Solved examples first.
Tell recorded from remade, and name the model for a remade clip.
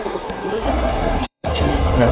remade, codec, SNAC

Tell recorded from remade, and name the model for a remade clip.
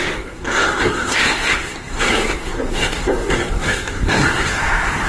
remade, codec, SNAC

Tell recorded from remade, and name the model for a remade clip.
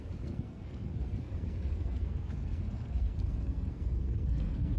remade, codec, SNAC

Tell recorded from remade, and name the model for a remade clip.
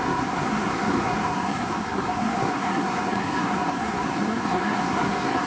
remade, codec, SNAC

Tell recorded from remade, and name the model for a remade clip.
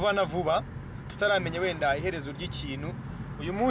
recorded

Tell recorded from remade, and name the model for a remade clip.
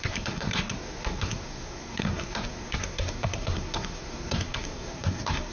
remade, codec, SNAC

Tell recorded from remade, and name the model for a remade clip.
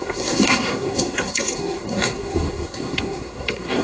remade, codec, SNAC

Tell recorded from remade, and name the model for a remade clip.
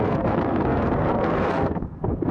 remade, codec, SNAC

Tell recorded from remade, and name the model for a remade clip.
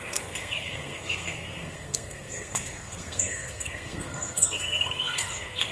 remade, codec, SNAC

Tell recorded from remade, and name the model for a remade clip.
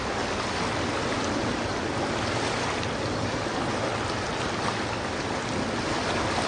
recorded